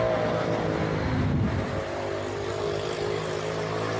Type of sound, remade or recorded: recorded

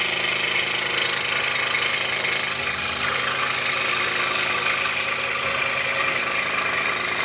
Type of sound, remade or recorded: recorded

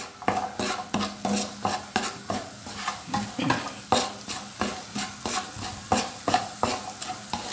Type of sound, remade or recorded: recorded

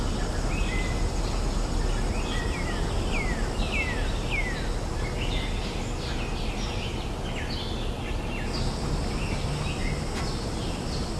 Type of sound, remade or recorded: recorded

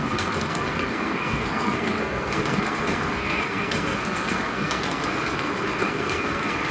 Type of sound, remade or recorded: remade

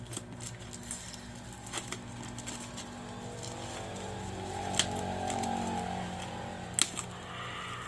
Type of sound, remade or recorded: recorded